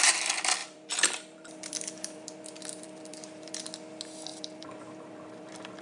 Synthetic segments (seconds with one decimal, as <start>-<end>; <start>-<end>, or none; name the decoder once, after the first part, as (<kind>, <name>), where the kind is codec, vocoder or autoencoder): 0.6-3.5 (vocoder, BigVGAN v2); 4.3-5.8

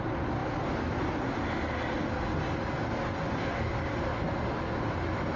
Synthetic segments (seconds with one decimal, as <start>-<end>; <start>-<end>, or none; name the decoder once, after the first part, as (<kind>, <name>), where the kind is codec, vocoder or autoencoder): none

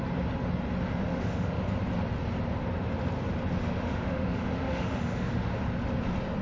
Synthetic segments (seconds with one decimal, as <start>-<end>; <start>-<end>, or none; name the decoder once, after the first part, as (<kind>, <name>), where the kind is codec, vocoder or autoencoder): 1.1-1.7 (autoencoder, DAC-VAE); 3.6-5.5

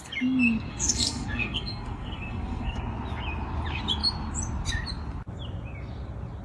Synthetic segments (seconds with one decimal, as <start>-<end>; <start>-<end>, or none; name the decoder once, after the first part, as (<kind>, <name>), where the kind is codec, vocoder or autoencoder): 0.7-2.8 (codec, SNAC)

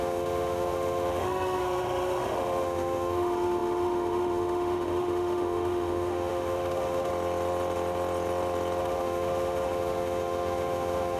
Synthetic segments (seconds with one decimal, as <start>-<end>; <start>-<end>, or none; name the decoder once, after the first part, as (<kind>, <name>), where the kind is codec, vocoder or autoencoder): 0.0-7.1 (autoencoder, DAC-VAE); 8.8-11.2

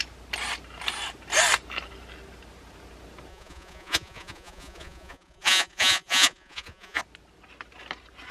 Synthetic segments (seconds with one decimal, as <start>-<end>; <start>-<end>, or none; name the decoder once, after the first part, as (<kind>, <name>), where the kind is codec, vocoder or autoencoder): 3.3-7.0 (vocoder, Vocos)

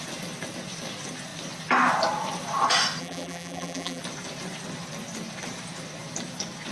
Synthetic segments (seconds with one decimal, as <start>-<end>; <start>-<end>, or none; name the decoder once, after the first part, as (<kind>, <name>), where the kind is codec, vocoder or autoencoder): 3.0-4.0 (vocoder, BigVGAN v2)